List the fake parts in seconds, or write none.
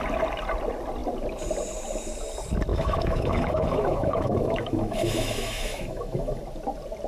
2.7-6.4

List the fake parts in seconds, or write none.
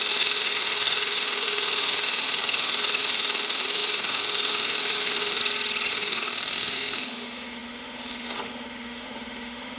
0.0-5.4; 5.9-9.8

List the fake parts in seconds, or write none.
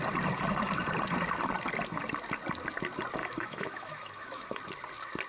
3.2-4.6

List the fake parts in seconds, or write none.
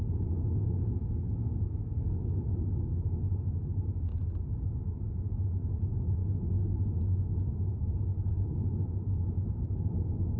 0.0-4.1; 4.7-10.4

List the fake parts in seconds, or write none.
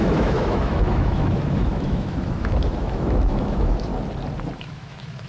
0.0-3.9; 4.6-5.3